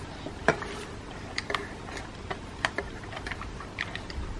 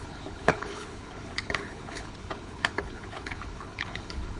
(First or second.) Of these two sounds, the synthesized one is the second